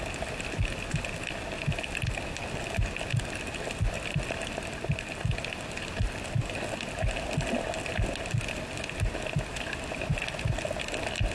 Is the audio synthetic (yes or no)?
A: no